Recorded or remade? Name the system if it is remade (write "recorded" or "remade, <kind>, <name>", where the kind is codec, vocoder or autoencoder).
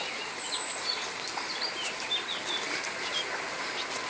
recorded